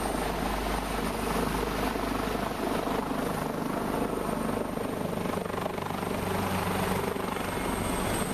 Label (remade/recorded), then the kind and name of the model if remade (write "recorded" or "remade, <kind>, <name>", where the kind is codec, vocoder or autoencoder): recorded